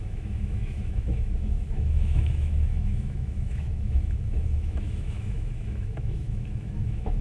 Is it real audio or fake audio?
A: fake